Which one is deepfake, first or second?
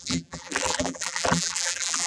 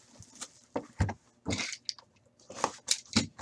first